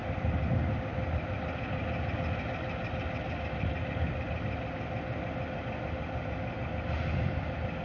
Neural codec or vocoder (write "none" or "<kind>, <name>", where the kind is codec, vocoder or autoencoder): none